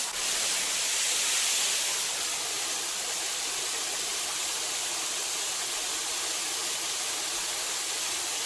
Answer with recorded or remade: recorded